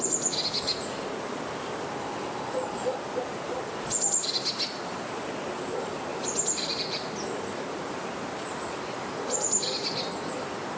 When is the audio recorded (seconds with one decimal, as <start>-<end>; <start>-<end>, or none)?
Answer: 0.0-10.8